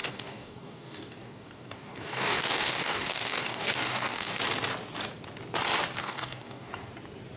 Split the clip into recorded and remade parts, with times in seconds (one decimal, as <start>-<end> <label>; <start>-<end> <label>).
0.0-4.4 remade; 4.4-6.0 recorded; 6.0-6.7 remade; 6.7-7.4 recorded